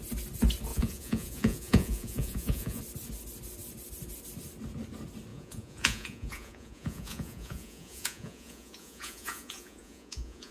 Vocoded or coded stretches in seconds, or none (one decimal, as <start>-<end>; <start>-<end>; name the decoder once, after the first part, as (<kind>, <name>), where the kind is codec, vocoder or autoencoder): 0.7-2.8 (vocoder, Vocos); 5.3-10.5